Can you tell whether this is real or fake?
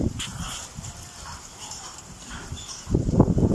fake